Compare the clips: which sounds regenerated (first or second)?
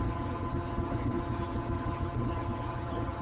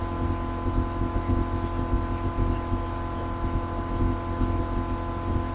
first